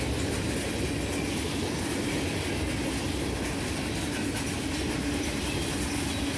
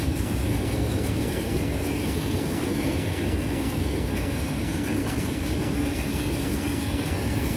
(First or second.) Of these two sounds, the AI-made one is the second